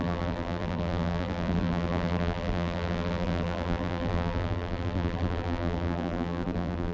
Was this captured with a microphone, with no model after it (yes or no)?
no